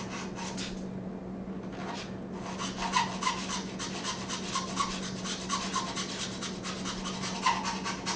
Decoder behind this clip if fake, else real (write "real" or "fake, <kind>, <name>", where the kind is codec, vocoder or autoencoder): real